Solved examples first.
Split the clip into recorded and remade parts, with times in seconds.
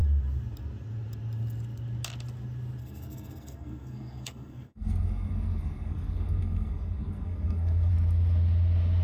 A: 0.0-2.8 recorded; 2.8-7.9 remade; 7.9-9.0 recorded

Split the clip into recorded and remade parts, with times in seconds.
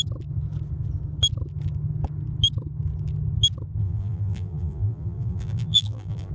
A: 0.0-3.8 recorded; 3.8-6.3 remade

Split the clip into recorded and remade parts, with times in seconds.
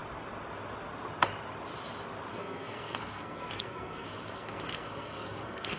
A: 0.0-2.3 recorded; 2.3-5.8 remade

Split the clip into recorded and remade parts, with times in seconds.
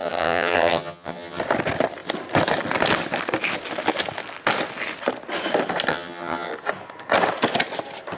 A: 0.0-1.4 remade; 1.4-5.9 recorded; 5.9-6.5 remade; 6.5-8.2 recorded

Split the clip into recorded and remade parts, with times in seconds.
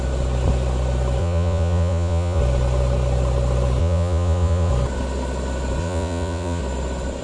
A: 0.0-1.2 recorded; 1.2-2.4 remade; 2.4-3.8 recorded; 3.8-4.7 remade; 4.7-5.8 recorded; 5.8-6.6 remade; 6.6-7.2 recorded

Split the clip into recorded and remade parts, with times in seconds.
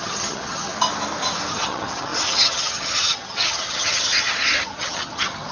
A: 0.0-0.7 remade; 0.7-1.5 recorded; 1.5-5.5 remade